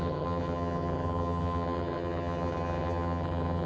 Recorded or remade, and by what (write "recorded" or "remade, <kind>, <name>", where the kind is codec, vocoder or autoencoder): remade, vocoder, HiFi-GAN